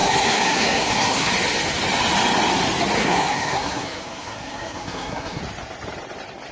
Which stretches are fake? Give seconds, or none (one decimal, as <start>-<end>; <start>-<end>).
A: 0.0-1.3; 3.0-5.4